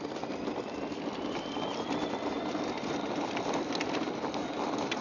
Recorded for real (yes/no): yes